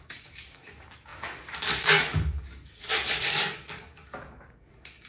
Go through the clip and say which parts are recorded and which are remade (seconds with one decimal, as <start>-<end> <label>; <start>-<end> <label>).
0.0-5.1 remade